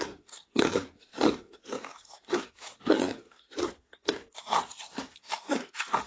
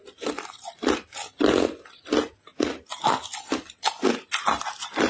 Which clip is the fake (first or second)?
first